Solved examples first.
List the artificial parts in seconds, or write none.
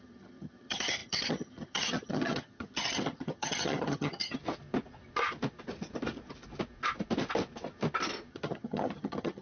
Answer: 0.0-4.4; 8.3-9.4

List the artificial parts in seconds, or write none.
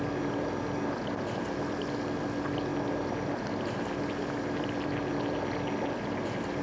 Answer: none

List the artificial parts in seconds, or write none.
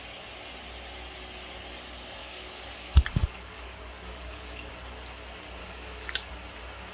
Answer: 2.2-4.7; 5.6-6.3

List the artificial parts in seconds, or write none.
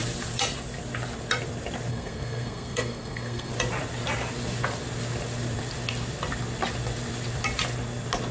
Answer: 1.9-3.5